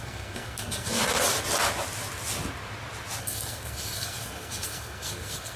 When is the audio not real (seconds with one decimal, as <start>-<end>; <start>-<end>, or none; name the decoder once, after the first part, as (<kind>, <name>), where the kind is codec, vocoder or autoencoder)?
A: 0.0-1.0 (codec, SNAC); 3.2-5.6